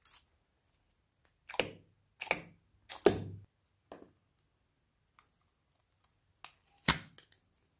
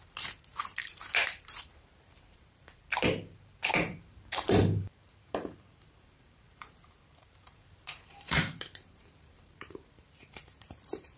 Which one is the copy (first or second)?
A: second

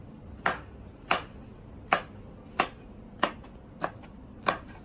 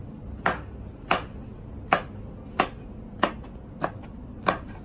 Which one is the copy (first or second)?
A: first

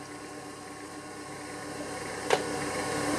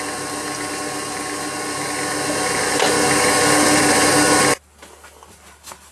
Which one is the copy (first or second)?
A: first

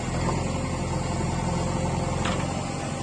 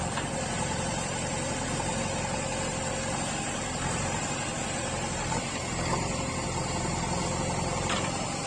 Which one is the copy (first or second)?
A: second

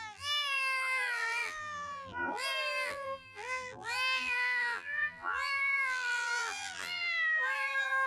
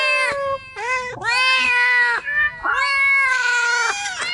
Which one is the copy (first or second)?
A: first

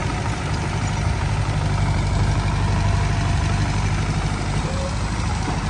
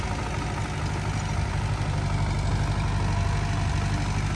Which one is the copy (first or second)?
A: first